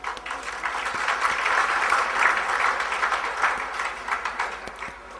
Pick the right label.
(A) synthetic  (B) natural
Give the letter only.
B